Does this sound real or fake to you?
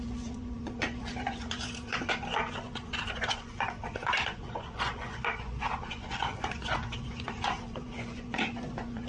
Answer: fake